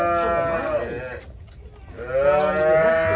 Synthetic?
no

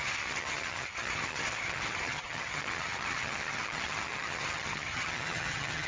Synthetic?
yes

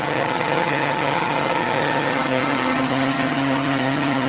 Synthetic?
yes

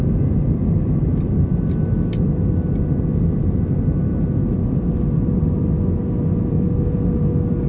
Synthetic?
no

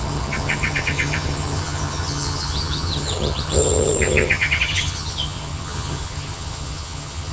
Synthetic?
yes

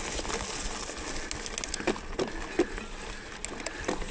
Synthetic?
no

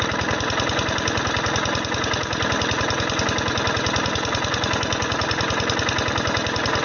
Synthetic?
no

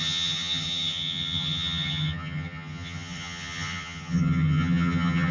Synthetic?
yes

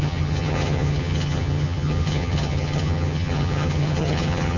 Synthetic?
yes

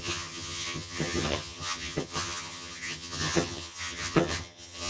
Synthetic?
yes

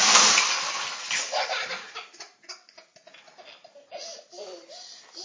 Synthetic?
no